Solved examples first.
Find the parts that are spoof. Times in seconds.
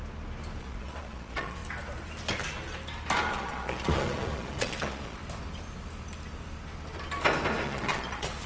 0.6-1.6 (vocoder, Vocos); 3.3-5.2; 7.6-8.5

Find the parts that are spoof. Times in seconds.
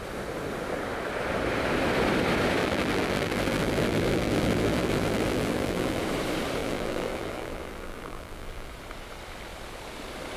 2.6-6.0 (vocoder, BigVGAN v2); 6.6-8.7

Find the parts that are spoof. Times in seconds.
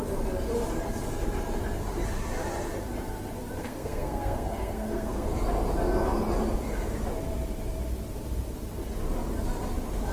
3.6-5.3 (codec, SNAC)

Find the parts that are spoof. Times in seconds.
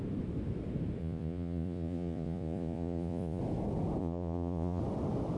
1.0-3.4 (vocoder, Vocos); 4.0-4.8